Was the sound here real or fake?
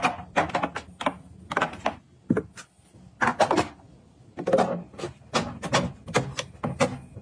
real